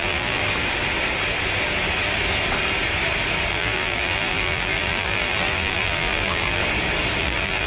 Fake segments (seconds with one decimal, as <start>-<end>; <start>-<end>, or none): 0.0-0.4; 3.5-6.6; 7.2-7.7